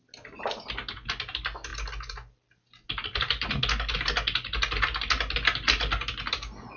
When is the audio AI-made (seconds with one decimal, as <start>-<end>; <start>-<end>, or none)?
none